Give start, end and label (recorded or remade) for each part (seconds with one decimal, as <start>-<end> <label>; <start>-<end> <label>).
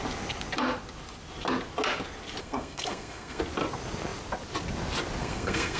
0.0-2.4 recorded; 2.4-3.4 remade; 3.4-5.2 recorded; 5.2-5.8 remade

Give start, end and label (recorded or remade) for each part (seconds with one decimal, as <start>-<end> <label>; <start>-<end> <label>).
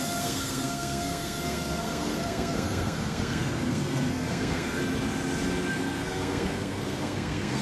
0.0-4.8 remade; 4.8-5.7 recorded; 5.7-7.6 remade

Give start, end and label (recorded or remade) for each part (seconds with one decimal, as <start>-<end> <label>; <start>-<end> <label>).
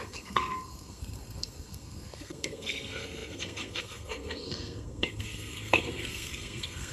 0.0-6.9 remade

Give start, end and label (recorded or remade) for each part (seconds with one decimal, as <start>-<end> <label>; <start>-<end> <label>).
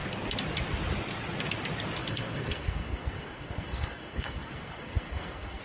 0.0-2.0 recorded; 2.0-5.6 remade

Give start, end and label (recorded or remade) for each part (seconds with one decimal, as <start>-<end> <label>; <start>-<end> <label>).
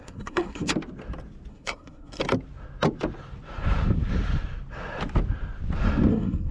0.0-0.7 remade; 0.7-1.5 recorded; 1.5-2.2 remade; 2.2-6.1 recorded; 6.1-6.5 remade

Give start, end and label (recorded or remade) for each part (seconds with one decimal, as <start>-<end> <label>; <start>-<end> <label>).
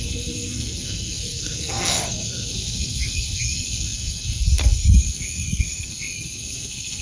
0.0-7.0 remade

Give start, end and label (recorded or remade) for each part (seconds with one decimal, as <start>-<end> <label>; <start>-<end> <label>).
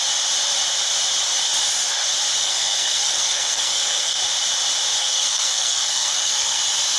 0.0-2.4 recorded; 2.4-4.2 remade; 4.2-5.0 recorded; 5.0-6.6 remade; 6.6-7.0 recorded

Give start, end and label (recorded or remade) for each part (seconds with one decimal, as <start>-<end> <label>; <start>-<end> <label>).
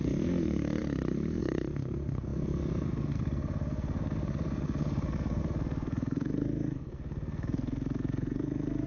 0.0-8.9 remade